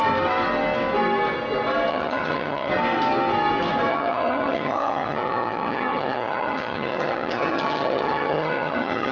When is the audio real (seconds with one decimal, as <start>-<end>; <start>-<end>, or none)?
0.0-1.9; 2.7-3.9